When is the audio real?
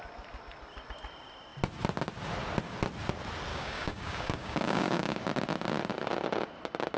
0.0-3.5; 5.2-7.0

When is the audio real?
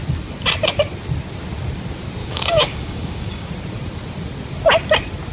0.0-2.2; 3.5-5.3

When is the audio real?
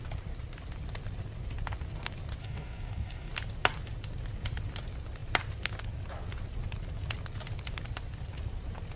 0.0-2.4; 3.3-9.0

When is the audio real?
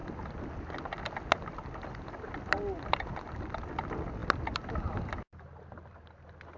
0.0-6.6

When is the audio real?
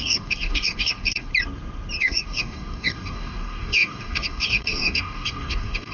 1.3-2.0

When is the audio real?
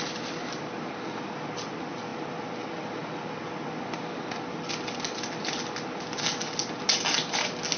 0.0-7.8